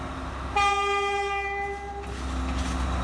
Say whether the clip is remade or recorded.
recorded